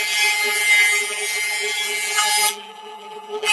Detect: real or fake fake